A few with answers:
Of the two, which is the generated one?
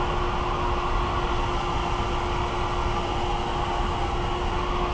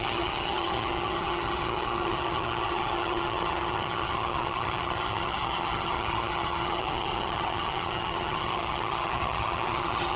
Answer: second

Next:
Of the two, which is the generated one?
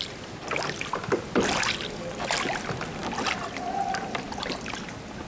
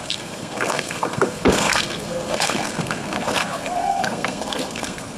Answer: second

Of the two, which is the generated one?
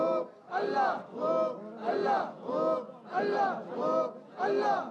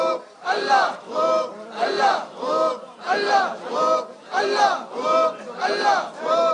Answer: second